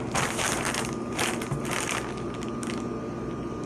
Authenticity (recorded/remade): recorded